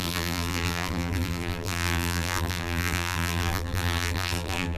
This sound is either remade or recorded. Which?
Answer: remade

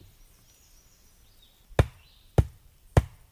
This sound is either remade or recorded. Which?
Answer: recorded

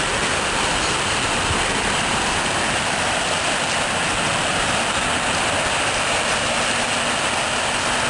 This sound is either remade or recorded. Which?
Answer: remade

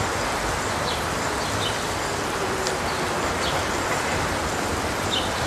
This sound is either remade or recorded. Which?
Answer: remade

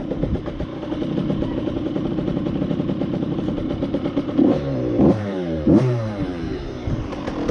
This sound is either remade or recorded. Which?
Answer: remade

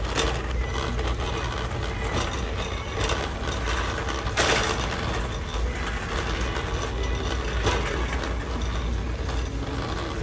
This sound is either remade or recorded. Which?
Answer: recorded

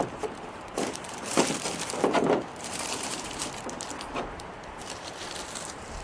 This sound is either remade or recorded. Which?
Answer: remade